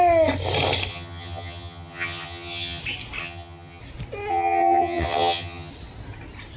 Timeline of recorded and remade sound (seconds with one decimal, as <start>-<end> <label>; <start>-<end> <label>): 0.0-0.9 recorded; 0.9-2.8 remade; 2.8-3.2 recorded; 3.2-3.8 remade; 3.8-4.3 recorded; 4.3-5.7 remade; 5.7-6.6 recorded